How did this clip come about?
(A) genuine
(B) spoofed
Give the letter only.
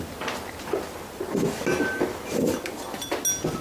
A